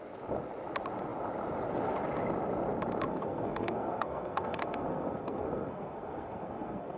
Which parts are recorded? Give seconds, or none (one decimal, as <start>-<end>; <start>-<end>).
0.0-3.1